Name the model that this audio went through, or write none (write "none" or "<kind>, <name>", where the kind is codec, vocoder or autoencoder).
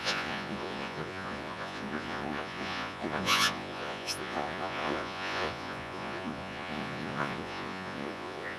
vocoder, Vocos